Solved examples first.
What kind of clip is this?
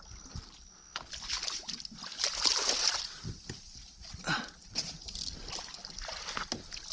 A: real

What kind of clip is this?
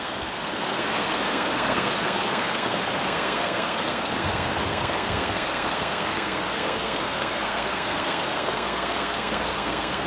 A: fake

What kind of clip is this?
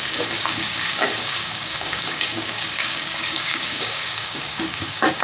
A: fake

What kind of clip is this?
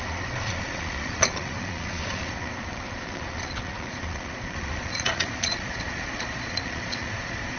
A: fake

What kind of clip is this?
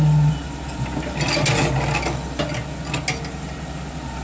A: real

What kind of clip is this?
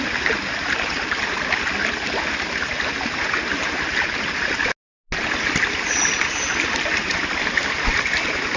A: real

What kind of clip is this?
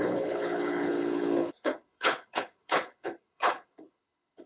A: fake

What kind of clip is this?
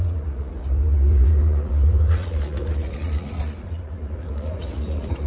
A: fake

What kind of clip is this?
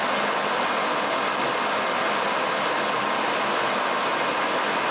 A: real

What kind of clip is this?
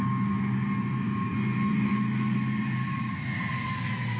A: real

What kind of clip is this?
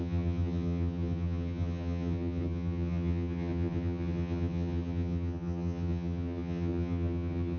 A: fake